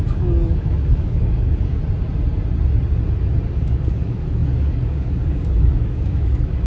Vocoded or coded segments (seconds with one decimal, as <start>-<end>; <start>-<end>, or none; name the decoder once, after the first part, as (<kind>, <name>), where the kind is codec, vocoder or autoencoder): 0.0-1.8 (codec, DAC); 3.6-6.7